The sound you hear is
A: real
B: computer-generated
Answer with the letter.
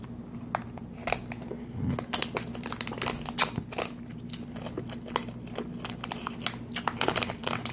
A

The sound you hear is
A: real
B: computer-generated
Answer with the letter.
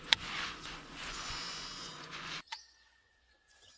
B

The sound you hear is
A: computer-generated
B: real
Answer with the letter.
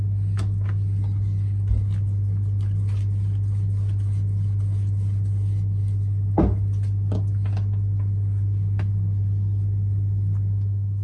B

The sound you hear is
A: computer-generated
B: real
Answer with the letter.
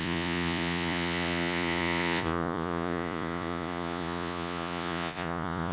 A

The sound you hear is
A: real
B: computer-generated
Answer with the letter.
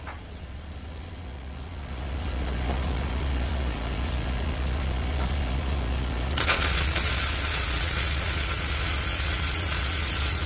B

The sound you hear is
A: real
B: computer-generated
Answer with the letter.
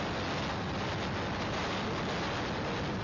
A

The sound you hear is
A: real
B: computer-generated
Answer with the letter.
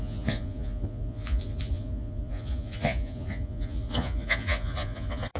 B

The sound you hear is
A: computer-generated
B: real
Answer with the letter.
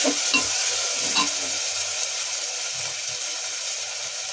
B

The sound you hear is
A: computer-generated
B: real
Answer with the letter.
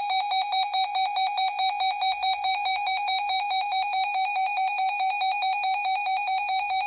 B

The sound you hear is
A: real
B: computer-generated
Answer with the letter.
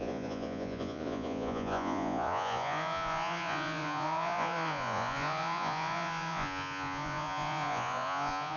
B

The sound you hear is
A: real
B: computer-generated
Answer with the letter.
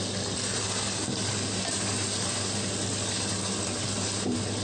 A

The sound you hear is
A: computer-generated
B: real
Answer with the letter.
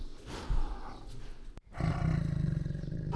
B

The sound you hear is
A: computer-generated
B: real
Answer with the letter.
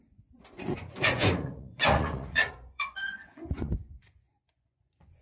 A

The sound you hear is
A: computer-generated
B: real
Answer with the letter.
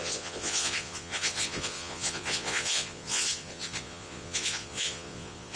A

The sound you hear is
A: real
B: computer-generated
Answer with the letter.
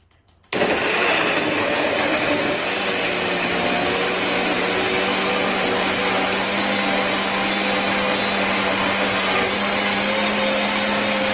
A